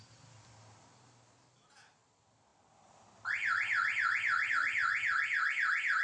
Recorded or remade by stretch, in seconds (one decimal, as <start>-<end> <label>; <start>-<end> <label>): 0.0-6.0 recorded